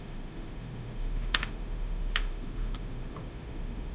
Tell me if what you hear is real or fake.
fake